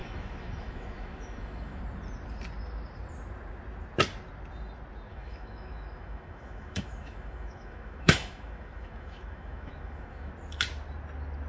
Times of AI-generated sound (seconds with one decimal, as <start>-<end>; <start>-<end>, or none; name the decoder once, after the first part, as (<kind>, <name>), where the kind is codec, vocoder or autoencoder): 0.0-1.8 (autoencoder, DAC-VAE); 5.1-10.3